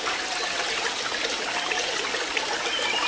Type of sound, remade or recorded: recorded